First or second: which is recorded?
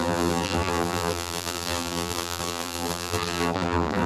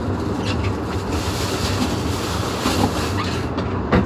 second